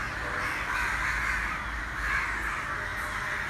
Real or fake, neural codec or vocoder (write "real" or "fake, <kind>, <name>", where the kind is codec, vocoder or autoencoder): real